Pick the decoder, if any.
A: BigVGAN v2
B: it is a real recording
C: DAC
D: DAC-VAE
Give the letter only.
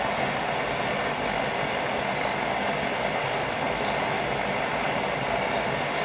B